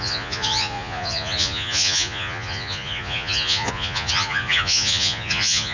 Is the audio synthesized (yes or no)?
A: yes